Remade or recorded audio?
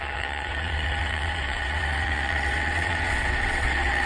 remade